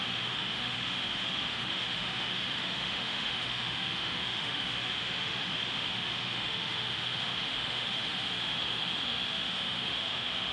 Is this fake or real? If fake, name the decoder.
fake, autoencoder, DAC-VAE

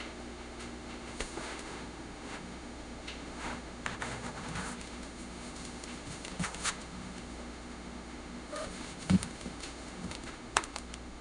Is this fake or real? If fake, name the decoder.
fake, autoencoder, DAC-VAE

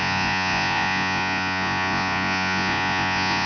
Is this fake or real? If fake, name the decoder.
fake, vocoder, Vocos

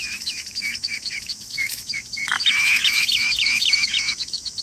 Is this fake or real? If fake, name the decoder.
fake, autoencoder, DAC-VAE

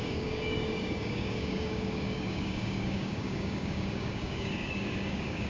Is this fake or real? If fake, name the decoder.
fake, codec, DAC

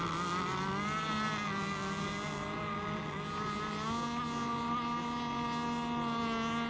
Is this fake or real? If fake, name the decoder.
real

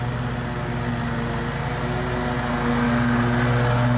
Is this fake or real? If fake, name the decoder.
real